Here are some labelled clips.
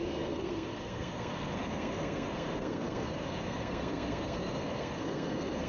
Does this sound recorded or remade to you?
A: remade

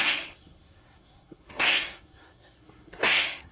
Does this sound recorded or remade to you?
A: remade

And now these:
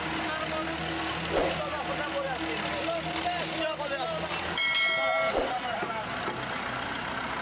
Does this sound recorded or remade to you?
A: recorded